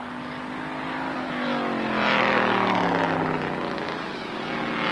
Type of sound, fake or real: real